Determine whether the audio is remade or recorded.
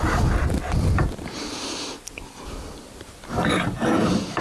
recorded